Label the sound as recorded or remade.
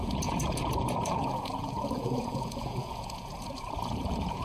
remade